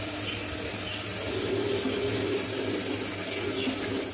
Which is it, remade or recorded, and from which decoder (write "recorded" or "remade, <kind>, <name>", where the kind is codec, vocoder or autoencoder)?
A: recorded